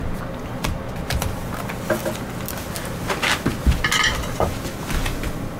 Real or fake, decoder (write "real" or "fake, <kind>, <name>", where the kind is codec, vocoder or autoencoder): real